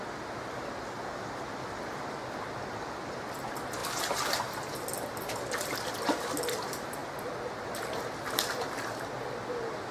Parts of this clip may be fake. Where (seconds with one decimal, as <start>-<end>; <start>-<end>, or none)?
none

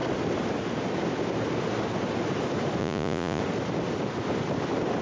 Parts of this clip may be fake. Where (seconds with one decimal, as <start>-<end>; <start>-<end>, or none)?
2.8-3.4

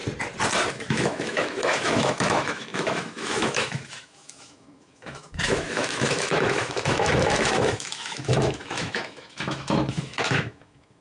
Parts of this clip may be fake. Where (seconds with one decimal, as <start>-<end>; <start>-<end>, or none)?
0.7-11.0

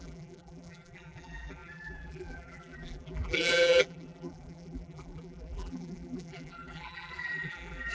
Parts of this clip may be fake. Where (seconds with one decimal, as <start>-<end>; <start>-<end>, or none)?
0.0-7.9

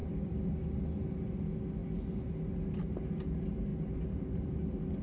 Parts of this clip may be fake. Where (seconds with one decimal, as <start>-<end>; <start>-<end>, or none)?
none

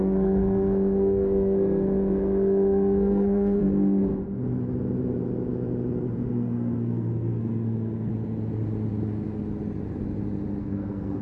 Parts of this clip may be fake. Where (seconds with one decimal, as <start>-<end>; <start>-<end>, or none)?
0.0-4.1; 6.3-8.1; 10.6-11.2

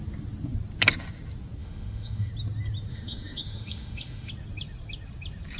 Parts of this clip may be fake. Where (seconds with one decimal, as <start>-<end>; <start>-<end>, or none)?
1.6-2.3; 2.9-4.3